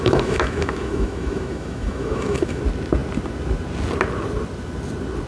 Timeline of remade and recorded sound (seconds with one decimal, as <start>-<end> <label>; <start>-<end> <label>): 0.0-2.6 remade; 2.6-5.3 recorded